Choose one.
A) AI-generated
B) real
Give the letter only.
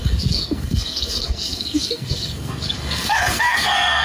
A